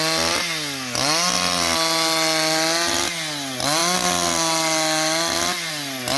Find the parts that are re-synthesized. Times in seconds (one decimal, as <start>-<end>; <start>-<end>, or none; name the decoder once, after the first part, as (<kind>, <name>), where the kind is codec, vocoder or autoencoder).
none